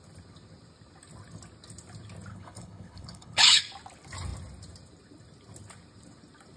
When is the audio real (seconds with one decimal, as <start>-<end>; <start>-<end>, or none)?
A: 0.0-2.3; 3.6-6.6